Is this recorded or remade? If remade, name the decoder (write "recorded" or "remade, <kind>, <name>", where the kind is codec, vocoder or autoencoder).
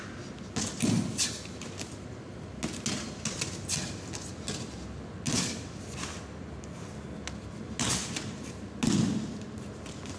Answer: recorded